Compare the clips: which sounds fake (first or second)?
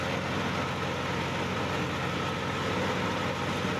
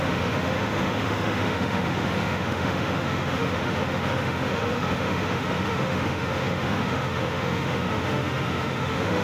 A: second